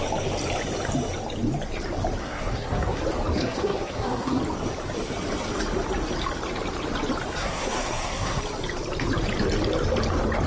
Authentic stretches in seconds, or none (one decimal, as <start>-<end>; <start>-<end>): 0.0-2.2; 3.0-3.4; 4.4-7.4; 8.4-10.5